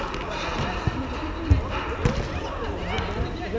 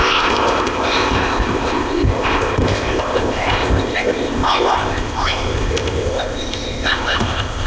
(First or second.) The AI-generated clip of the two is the second